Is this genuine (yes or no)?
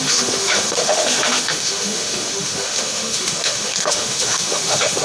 no